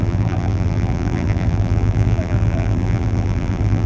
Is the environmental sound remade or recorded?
remade